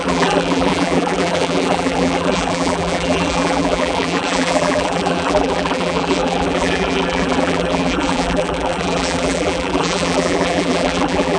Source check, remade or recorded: remade